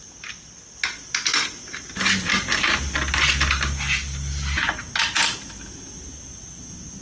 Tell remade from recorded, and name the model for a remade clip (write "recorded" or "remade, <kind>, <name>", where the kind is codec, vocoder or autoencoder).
recorded